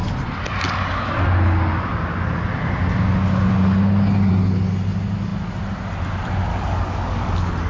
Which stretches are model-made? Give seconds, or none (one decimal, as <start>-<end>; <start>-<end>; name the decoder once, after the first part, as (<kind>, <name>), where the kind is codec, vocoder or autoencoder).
6.5-7.7 (codec, DAC)

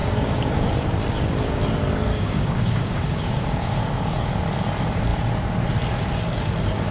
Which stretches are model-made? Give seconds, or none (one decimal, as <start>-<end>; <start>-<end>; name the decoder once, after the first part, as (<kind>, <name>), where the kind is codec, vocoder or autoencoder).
0.0-0.7 (codec, DAC); 2.1-4.3

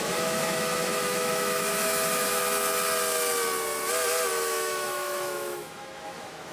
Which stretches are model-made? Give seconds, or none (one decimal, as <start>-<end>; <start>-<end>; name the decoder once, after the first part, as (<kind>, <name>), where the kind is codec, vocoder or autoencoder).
0.0-2.4 (autoencoder, DAC-VAE); 4.3-6.5

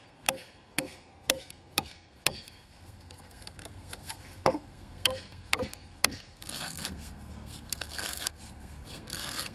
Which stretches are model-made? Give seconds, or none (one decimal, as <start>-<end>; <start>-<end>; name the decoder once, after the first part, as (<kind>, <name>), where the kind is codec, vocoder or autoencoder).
0.0-9.5 (codec, SNAC)

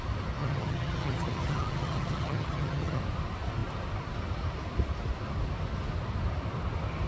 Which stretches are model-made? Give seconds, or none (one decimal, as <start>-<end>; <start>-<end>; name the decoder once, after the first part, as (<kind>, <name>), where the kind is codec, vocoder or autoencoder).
0.4-3.0 (vocoder, HiFi-GAN)